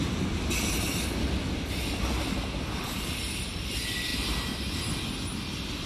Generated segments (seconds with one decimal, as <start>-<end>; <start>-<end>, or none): none